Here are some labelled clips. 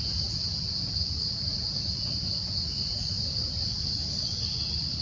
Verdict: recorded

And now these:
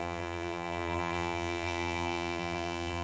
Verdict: remade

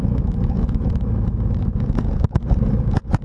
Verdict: remade